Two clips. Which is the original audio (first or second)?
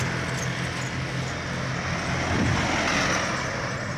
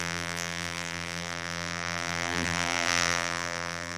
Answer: first